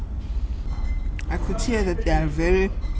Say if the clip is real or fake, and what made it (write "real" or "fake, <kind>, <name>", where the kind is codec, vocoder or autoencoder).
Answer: real